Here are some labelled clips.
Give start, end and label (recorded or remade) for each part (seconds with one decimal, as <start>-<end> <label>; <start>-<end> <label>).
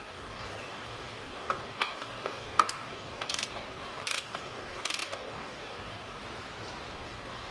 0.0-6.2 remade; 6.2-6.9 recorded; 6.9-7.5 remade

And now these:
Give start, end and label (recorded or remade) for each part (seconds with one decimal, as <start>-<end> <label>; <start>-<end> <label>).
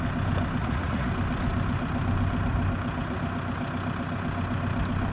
0.0-0.6 recorded; 0.6-1.1 remade; 1.1-5.1 recorded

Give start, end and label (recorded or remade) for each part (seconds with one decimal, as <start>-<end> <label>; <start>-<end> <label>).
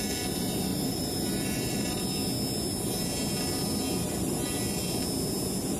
0.0-0.7 recorded; 0.7-2.0 remade; 2.0-5.8 recorded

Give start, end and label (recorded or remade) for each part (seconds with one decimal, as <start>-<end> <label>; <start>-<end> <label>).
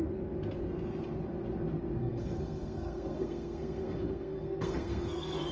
0.0-2.0 recorded; 2.0-5.5 remade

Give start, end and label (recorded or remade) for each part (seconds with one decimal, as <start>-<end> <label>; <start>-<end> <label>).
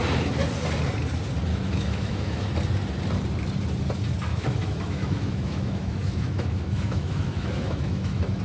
0.0-1.5 recorded; 1.5-2.5 remade; 2.5-4.3 recorded; 4.3-8.4 remade